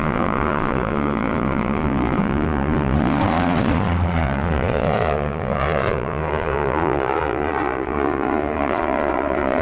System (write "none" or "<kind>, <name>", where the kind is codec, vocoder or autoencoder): vocoder, Vocos